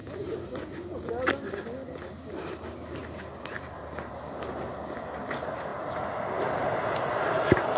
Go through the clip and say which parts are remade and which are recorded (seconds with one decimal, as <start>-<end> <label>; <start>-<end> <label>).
0.0-7.8 recorded